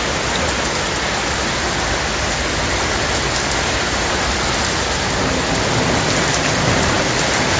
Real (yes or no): yes